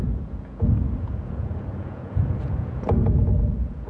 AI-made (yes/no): yes